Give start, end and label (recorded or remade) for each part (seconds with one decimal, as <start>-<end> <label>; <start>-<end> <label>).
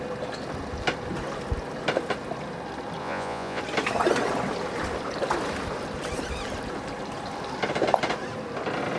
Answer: 0.0-3.0 recorded; 3.0-3.6 remade; 3.6-9.0 recorded